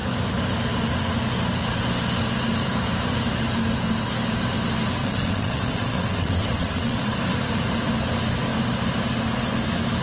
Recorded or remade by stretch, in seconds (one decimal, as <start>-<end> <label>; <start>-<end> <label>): 0.0-5.0 recorded; 5.0-7.1 remade; 7.1-10.0 recorded